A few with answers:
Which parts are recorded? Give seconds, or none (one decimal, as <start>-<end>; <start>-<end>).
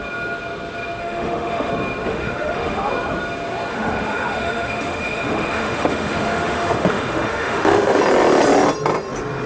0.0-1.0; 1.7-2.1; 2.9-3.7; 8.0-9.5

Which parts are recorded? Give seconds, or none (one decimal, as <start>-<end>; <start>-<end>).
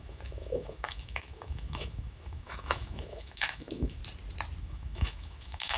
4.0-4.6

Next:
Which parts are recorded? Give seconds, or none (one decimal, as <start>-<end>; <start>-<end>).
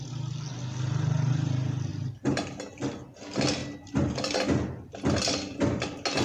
0.0-6.2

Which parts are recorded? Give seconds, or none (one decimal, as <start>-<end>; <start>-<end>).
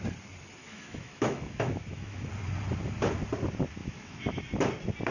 0.0-0.6; 2.3-3.8; 4.4-5.1